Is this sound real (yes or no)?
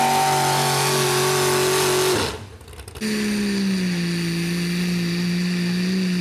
yes